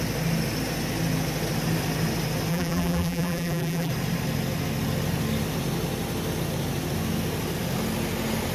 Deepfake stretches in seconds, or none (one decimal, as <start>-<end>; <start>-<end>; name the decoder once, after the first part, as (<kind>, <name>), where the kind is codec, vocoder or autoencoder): 2.5-3.9 (vocoder, BigVGAN v2)